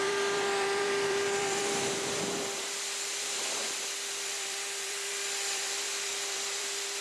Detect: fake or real fake